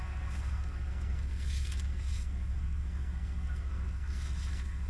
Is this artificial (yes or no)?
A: yes